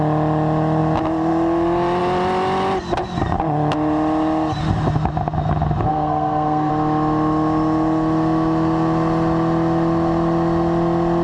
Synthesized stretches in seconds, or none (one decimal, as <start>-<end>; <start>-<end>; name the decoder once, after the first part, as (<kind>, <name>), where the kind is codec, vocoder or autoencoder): 5.9-6.7 (codec, SNAC)